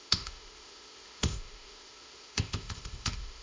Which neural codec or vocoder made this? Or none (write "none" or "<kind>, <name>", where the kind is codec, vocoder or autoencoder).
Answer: codec, ZipCodec